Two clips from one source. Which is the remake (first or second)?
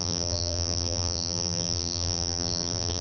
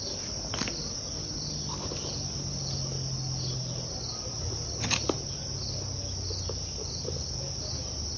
first